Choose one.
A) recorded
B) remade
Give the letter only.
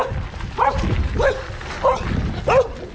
A